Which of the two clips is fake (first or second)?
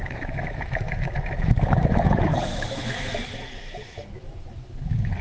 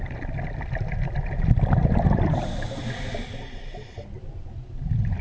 first